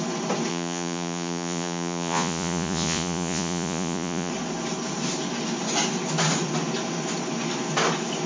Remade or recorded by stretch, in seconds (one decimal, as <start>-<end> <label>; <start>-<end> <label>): 0.0-0.5 recorded; 0.5-4.3 remade; 4.3-8.3 recorded